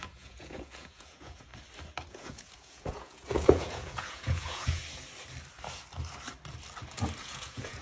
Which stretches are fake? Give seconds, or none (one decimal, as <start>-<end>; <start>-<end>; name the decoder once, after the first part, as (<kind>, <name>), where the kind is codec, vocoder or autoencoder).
0.0-1.5 (vocoder, Vocos); 2.1-4.8; 7.2-7.8